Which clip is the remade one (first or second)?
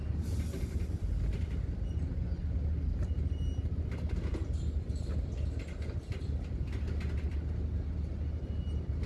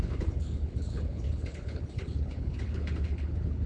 second